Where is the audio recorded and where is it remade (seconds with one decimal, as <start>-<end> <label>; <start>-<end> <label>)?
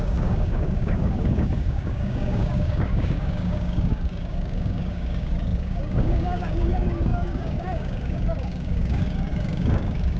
0.0-10.2 remade